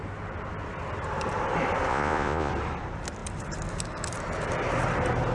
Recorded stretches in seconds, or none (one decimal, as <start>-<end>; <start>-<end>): 0.0-1.9; 2.5-5.3